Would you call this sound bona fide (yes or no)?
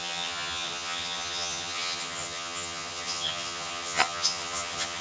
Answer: no